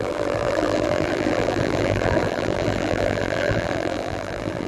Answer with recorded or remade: remade